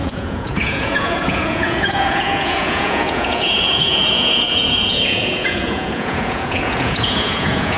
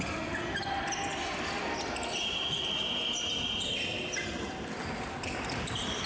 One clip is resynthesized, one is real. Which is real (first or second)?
second